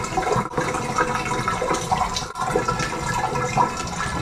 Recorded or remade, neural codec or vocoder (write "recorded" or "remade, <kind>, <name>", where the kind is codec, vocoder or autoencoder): recorded